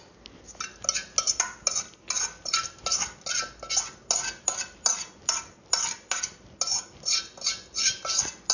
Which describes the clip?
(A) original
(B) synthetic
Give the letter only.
A